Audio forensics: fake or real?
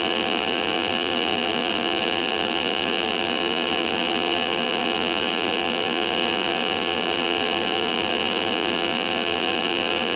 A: fake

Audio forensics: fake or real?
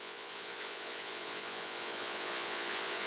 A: fake